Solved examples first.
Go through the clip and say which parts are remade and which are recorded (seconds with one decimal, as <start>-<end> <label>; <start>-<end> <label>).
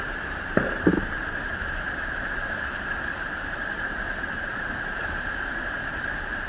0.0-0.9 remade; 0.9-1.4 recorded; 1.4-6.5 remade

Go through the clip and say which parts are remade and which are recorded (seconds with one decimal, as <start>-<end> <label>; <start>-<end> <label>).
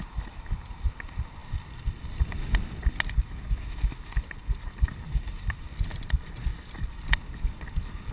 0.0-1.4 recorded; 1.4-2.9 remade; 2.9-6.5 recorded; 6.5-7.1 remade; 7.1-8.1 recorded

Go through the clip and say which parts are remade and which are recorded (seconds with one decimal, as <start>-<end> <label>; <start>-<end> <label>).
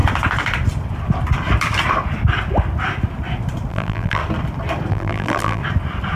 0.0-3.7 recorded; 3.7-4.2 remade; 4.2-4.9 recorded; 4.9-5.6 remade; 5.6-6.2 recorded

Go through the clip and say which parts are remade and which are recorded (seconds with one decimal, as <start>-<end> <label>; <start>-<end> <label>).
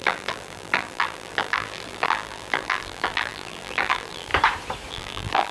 0.0-4.3 remade; 4.3-4.9 recorded; 4.9-5.5 remade